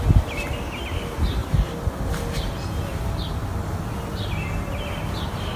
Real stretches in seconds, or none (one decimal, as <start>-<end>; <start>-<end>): 0.0-5.6